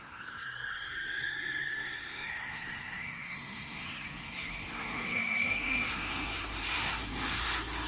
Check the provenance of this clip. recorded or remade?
remade